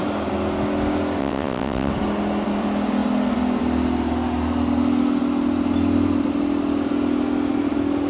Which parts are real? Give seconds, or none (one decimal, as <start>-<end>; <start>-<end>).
0.0-1.2; 1.9-8.1